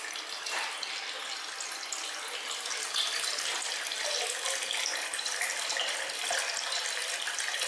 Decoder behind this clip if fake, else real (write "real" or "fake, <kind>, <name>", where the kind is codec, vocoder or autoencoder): real